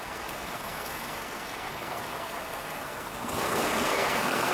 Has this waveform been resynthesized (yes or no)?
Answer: yes